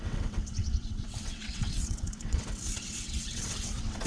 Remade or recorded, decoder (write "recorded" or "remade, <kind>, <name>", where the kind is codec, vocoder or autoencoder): remade, vocoder, WaveNeXt